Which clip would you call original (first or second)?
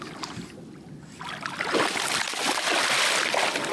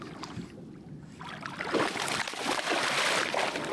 first